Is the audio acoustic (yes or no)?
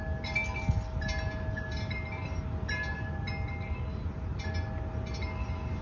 yes